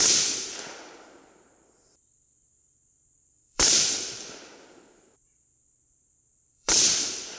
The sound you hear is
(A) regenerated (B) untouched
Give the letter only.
A